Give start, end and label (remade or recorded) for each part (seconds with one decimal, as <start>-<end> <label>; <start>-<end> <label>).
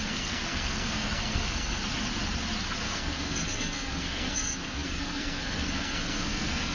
0.0-1.8 remade; 1.8-2.8 recorded; 2.8-6.7 remade